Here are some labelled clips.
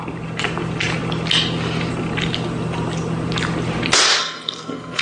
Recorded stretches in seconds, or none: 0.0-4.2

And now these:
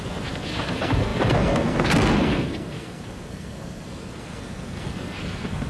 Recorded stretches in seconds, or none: none

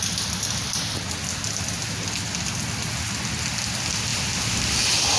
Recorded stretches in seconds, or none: 0.0-5.2

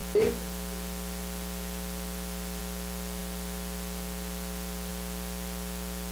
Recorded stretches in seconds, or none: 0.0-6.1